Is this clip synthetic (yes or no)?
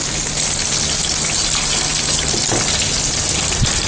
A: no